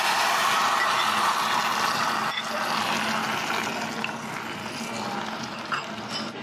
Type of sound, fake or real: real